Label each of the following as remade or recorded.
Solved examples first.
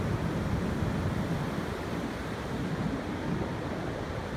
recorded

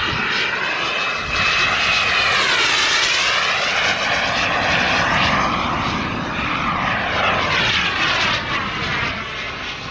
recorded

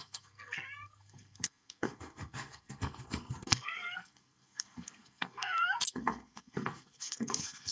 remade